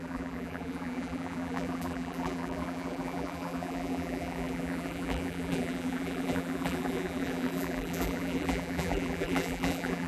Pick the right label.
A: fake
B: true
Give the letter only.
A